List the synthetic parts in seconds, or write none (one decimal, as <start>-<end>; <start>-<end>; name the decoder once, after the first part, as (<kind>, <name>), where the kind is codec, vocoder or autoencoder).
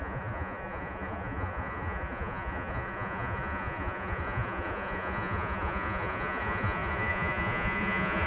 0.0-8.3 (vocoder, Vocos)